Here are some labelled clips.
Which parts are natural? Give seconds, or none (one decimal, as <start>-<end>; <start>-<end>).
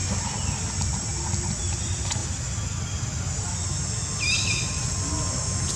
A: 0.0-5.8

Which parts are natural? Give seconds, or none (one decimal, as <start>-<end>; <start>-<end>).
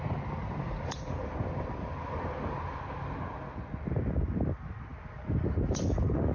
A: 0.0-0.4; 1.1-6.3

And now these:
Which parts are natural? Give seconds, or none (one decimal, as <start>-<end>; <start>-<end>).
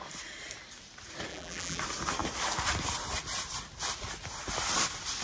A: 0.0-1.3; 1.8-5.2